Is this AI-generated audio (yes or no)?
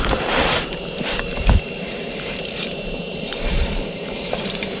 yes